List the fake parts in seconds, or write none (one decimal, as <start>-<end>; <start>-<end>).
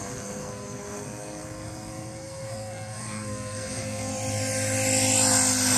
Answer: 0.0-4.1